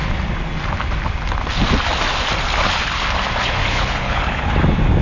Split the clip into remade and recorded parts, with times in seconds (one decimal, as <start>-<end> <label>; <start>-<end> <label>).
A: 0.0-3.6 recorded; 3.6-4.5 remade; 4.5-5.0 recorded